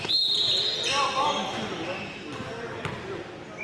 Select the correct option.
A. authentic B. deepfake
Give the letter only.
A